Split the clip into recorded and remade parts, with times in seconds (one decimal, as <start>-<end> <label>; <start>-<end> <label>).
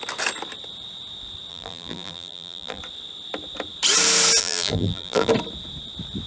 0.0-1.5 recorded; 1.5-2.8 remade; 2.8-4.4 recorded; 4.4-5.3 remade; 5.3-6.3 recorded